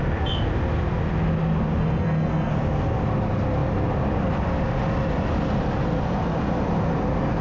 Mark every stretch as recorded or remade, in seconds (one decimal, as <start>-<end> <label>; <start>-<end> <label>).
0.0-1.8 recorded; 1.8-2.5 remade; 2.5-7.4 recorded